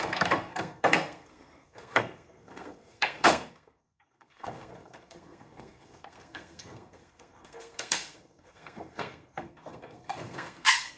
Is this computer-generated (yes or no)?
yes